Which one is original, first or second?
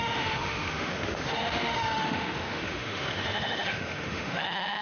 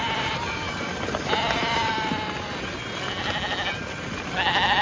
second